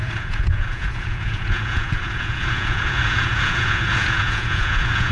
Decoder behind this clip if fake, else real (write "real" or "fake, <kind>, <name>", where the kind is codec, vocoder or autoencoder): fake, vocoder, Vocos